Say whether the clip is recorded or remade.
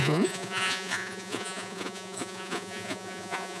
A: remade